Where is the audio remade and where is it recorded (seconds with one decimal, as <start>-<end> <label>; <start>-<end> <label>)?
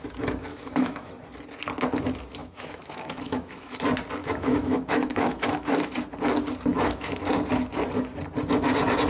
0.0-0.5 recorded; 0.5-1.1 remade; 1.1-2.4 recorded; 2.4-3.8 remade; 3.8-4.2 recorded; 4.2-5.9 remade; 5.9-6.7 recorded; 6.7-7.3 remade; 7.3-9.1 recorded